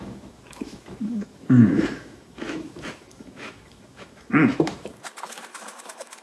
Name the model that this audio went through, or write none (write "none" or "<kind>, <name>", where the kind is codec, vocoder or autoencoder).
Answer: autoencoder, DAC-VAE